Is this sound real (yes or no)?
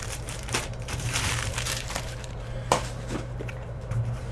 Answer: no